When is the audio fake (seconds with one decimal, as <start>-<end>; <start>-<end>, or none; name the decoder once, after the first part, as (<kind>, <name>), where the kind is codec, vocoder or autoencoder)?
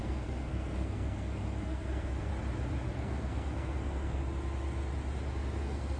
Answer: 0.0-2.3 (codec, SNAC); 2.9-4.2; 5.6-6.0